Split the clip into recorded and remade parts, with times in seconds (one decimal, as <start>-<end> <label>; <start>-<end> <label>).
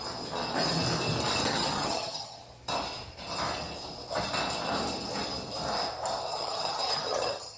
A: 0.0-1.5 recorded; 1.5-2.4 remade; 2.4-6.3 recorded; 6.3-7.6 remade